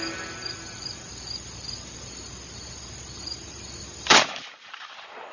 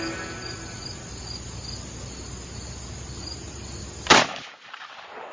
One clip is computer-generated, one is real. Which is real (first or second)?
second